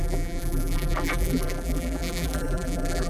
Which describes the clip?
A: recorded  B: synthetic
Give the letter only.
B